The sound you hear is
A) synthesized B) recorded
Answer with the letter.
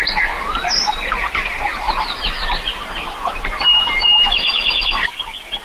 B